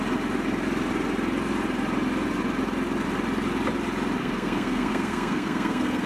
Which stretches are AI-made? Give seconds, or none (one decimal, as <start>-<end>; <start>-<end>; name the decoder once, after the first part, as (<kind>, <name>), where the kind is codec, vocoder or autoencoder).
4.2-6.1 (codec, SNAC)